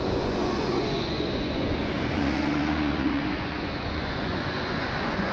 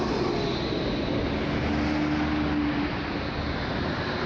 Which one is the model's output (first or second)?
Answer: first